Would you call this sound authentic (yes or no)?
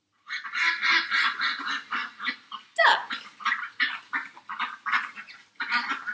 yes